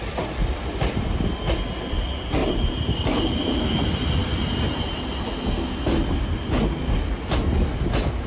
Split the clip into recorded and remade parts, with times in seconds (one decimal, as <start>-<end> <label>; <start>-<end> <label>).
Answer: 0.0-2.4 recorded; 2.4-3.6 remade; 3.6-8.3 recorded